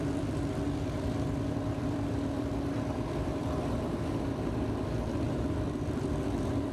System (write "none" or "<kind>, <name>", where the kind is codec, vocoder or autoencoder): vocoder, BigVGAN v2